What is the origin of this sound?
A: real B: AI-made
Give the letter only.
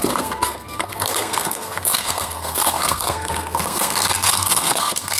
B